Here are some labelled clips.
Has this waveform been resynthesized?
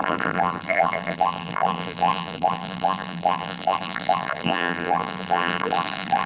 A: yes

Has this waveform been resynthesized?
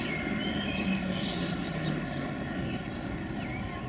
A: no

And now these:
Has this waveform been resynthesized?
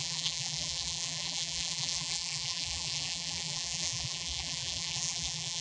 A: yes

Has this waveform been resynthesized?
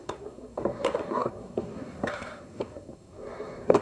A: yes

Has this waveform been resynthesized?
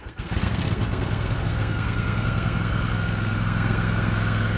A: yes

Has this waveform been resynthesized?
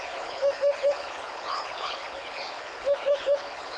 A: yes